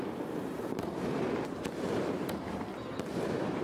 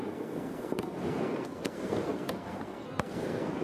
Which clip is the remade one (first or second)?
second